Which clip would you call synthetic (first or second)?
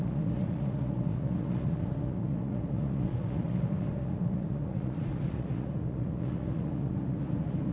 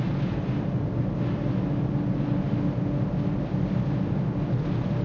first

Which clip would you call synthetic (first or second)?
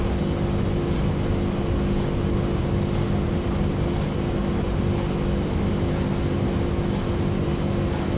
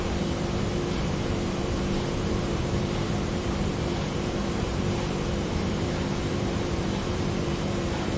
second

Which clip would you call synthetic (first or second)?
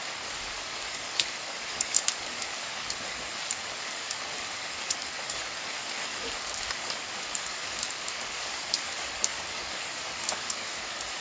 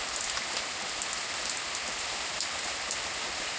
first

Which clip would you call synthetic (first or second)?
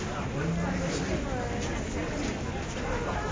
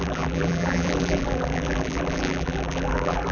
second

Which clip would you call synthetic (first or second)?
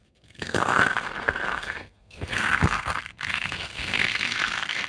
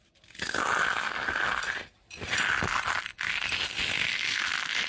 first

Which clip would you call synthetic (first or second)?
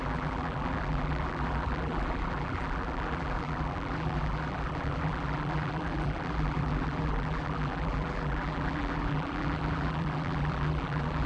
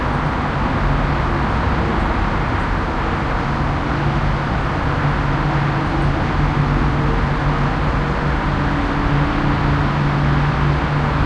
first